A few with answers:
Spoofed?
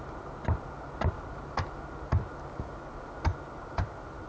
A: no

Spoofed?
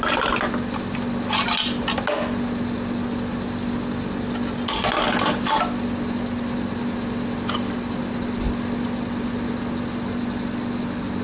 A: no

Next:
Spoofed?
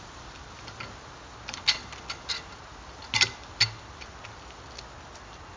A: no